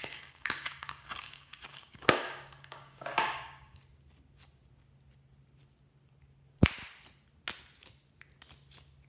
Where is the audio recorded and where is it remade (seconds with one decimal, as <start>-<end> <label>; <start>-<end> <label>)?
0.0-3.8 remade; 3.8-9.1 recorded